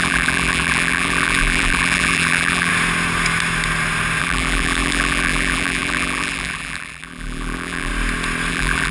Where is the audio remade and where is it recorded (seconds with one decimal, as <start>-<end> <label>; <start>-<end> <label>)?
0.0-2.7 remade; 2.7-4.2 recorded; 4.2-7.9 remade; 7.9-8.5 recorded; 8.5-8.9 remade